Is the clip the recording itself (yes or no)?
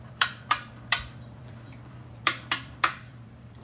no